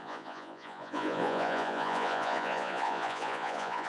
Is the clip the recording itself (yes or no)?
no